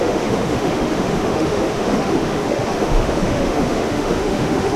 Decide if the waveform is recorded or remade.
remade